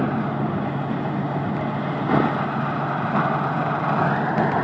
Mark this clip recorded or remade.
recorded